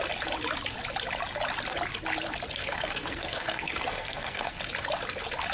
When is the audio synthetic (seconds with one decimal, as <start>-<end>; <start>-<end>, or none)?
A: 2.6-4.6